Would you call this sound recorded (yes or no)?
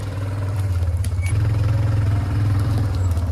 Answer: no